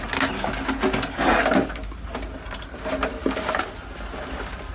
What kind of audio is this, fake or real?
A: real